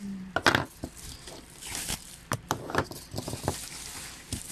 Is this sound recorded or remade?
remade